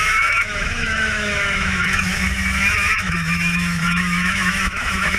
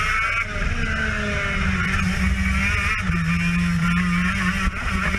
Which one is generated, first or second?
first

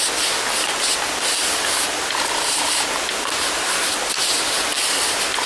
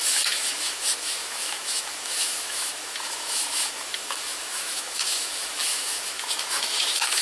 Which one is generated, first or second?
second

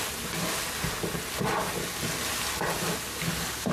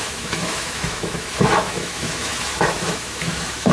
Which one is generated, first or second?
second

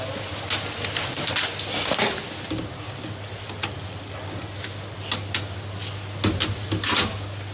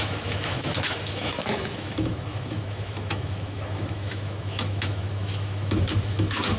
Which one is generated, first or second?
second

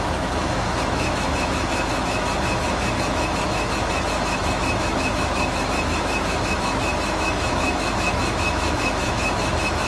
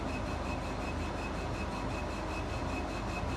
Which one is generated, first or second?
first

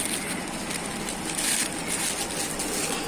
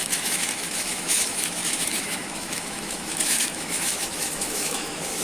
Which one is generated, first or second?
second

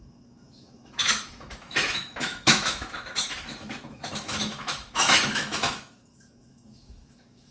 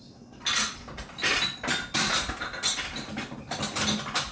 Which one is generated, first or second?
first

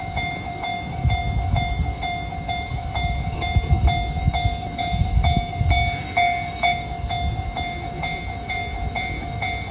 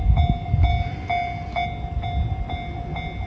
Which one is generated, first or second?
first